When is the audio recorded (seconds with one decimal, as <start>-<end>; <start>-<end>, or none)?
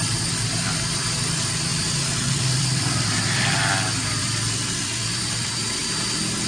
5.8-6.5